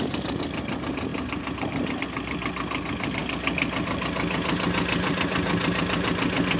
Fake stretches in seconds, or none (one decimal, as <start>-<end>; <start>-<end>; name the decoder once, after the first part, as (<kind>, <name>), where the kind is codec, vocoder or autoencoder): none

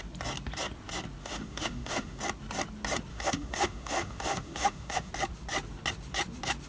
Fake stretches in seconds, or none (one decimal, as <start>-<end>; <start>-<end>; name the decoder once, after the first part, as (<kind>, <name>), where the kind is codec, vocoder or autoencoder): 1.2-2.2 (autoencoder, DAC-VAE); 3.1-5.1

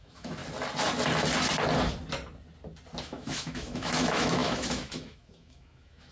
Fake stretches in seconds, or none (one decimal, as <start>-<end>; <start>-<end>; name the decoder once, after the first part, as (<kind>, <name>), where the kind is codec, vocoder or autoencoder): 0.0-0.4 (autoencoder, DAC-VAE); 3.0-6.1

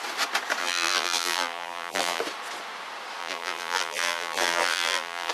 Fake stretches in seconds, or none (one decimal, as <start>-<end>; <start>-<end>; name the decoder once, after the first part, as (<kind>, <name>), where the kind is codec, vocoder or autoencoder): 0.6-2.2 (vocoder, BigVGAN v2); 3.2-5.3

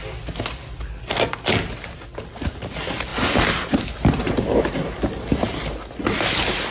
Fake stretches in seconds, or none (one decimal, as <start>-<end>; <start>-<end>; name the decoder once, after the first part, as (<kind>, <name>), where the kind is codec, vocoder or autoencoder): none